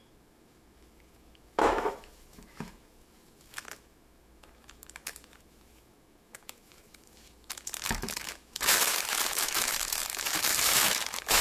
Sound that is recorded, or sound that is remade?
remade